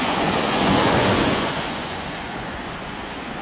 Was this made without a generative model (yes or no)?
no